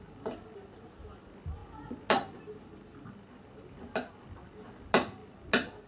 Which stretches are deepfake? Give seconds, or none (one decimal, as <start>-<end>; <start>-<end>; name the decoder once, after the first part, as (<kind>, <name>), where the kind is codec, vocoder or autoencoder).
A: none